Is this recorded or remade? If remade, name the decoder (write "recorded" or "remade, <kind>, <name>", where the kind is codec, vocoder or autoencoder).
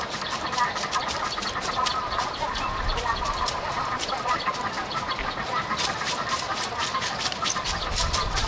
remade, vocoder, BigVGAN v2